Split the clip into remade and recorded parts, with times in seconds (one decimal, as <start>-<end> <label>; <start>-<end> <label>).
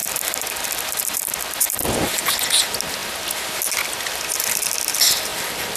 0.0-1.8 remade; 1.8-5.3 recorded; 5.3-5.8 remade